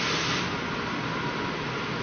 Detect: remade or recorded recorded